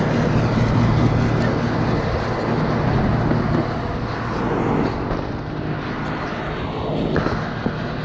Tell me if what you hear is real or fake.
real